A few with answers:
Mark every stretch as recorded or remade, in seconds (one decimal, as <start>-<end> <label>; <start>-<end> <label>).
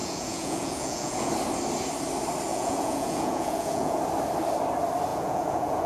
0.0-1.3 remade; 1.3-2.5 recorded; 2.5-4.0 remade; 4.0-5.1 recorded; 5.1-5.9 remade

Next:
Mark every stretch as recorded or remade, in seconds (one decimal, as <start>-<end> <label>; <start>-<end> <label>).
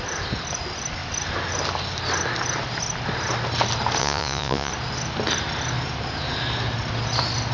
0.0-4.0 recorded; 4.0-4.7 remade; 4.7-7.5 recorded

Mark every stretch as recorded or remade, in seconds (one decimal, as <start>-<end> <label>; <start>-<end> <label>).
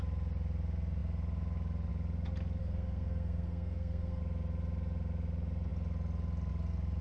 0.0-2.6 recorded; 2.6-4.2 remade; 4.2-7.0 recorded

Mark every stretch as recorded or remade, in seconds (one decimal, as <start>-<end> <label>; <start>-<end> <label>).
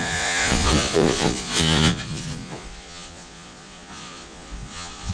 0.0-5.1 remade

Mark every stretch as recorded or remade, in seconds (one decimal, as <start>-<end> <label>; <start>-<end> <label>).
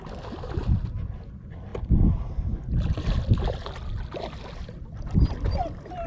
0.0-6.1 recorded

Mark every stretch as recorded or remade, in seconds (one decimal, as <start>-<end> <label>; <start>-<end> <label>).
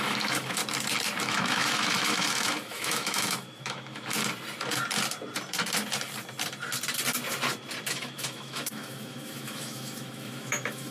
0.0-0.6 remade; 0.6-1.2 recorded; 1.2-4.2 remade; 4.2-7.9 recorded; 7.9-10.9 remade